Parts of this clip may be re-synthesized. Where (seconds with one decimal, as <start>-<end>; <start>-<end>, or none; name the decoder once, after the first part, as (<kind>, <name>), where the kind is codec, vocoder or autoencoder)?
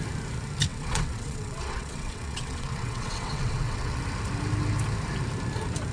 0.7-4.0 (vocoder, WaveNeXt)